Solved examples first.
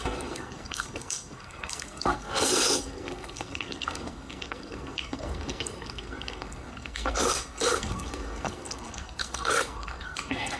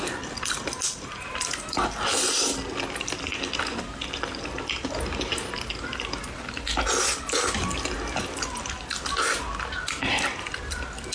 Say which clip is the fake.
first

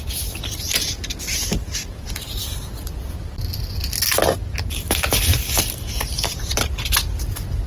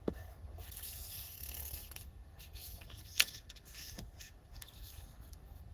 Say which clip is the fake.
second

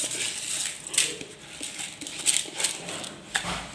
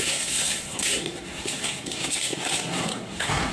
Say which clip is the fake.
second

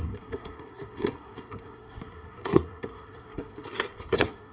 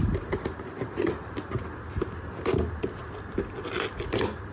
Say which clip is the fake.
first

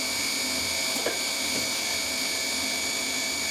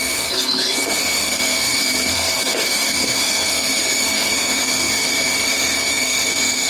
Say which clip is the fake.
second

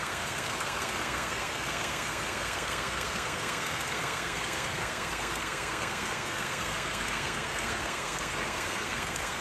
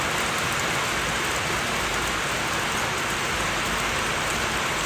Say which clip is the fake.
first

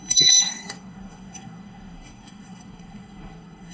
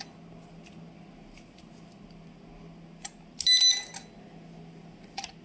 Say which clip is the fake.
first